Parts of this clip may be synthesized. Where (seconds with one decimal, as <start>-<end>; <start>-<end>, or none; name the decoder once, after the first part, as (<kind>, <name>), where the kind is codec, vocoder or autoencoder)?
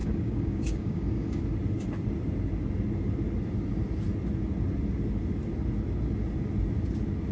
0.0-1.4 (codec, DAC)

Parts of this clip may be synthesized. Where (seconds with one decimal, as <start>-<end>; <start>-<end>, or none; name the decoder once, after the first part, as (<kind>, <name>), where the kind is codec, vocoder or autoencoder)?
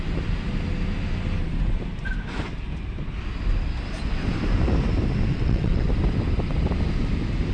5.3-5.9 (vocoder, WaveNeXt)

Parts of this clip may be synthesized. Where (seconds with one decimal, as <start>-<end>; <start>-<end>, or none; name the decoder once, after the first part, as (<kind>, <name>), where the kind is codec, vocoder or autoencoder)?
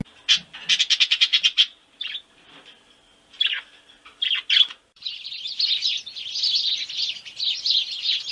1.3-5.6 (vocoder, BigVGAN v2); 7.0-7.6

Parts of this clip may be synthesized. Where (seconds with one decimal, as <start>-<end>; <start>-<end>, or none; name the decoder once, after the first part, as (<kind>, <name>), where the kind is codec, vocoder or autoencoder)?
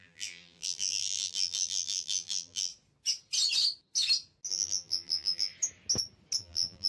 0.0-2.7 (vocoder, BigVGAN v2); 4.5-5.5; 6.4-6.9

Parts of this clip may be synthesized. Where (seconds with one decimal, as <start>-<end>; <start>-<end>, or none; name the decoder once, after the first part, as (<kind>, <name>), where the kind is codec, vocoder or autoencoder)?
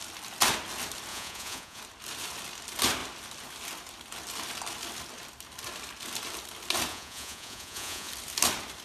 1.1-1.8 (vocoder, Vocos); 6.9-8.1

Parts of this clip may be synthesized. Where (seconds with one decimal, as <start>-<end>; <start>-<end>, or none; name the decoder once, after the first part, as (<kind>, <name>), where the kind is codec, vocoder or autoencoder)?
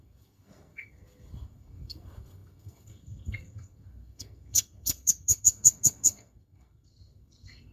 0.0-7.7 (codec, SNAC)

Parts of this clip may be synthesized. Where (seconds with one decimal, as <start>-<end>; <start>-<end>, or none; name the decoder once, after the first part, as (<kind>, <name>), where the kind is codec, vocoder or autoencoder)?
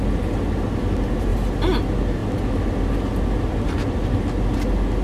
none